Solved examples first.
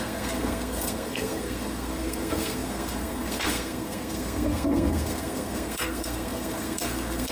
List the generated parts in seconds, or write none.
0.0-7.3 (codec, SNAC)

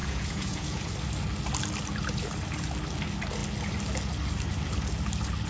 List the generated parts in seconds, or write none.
0.0-0.9 (vocoder, Vocos)